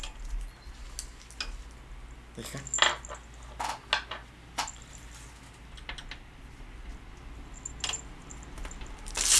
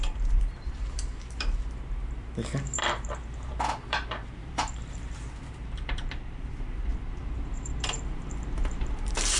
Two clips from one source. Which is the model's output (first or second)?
second